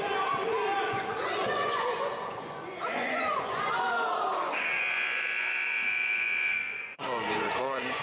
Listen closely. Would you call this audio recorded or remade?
remade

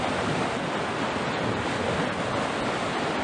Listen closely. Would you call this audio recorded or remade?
recorded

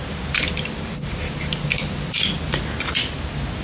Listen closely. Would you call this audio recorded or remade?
recorded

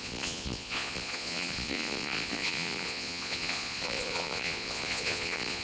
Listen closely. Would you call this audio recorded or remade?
remade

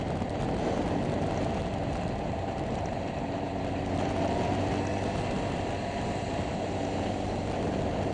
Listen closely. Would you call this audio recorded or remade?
recorded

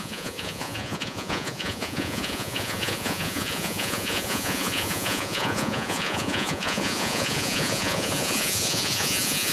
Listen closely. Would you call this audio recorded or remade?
remade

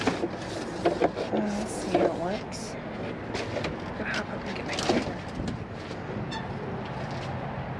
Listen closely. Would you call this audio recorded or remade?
recorded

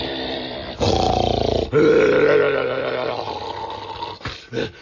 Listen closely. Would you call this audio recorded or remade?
recorded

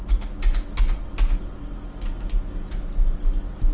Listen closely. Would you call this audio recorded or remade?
recorded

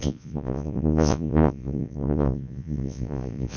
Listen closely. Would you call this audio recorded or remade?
remade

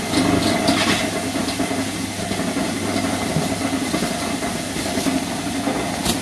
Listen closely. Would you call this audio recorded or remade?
recorded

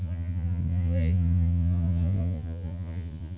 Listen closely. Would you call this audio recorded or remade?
remade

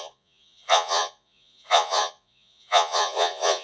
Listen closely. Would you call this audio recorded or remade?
remade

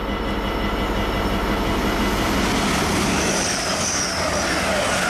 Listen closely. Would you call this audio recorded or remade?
recorded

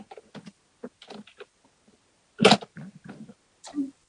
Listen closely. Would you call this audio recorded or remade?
recorded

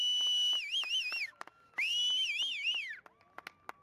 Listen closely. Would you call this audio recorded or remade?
recorded